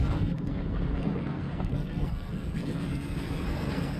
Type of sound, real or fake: fake